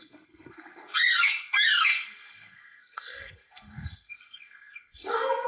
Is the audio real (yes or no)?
no